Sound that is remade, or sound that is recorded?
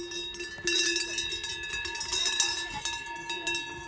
recorded